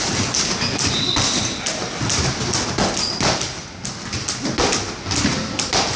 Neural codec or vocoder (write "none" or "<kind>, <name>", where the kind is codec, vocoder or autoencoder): none